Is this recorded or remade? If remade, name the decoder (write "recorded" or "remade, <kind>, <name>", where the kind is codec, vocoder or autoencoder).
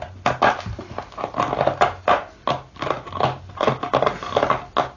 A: recorded